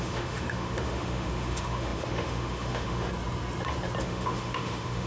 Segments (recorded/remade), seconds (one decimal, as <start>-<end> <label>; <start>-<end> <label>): 0.0-3.1 remade; 3.1-4.0 recorded; 4.0-5.1 remade